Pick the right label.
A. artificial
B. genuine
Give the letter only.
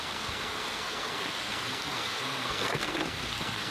A